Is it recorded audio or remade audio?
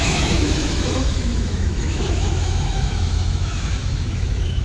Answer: remade